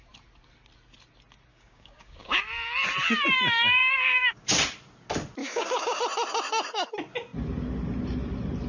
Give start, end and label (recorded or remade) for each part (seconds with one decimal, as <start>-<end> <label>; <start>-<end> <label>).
0.0-1.5 recorded; 1.5-2.4 remade; 2.4-3.8 recorded; 3.8-4.5 remade; 4.5-5.4 recorded; 5.4-6.0 remade; 6.0-8.7 recorded

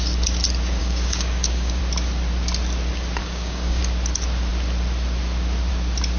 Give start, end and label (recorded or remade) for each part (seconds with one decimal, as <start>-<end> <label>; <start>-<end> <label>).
0.0-0.8 recorded; 0.8-1.8 remade; 1.8-3.2 recorded; 3.2-3.8 remade; 3.8-6.2 recorded